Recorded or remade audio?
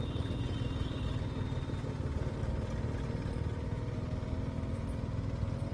recorded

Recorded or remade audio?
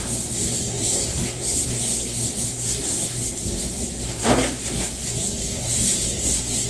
remade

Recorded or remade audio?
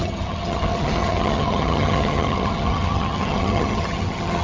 remade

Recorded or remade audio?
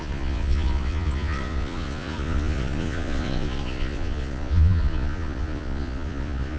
remade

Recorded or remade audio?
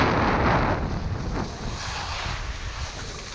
recorded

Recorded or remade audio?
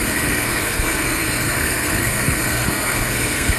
remade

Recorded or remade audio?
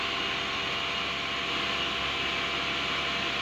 recorded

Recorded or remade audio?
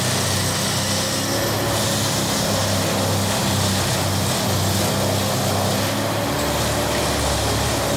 recorded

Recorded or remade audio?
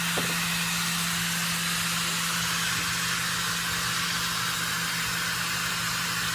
recorded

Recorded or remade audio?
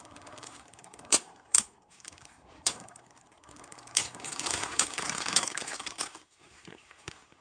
remade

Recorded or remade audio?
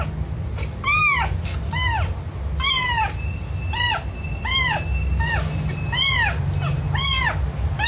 recorded